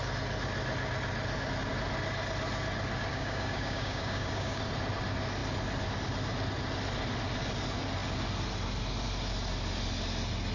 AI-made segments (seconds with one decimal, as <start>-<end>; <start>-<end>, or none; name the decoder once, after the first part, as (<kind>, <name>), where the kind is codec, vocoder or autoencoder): 3.1-4.6 (codec, DAC)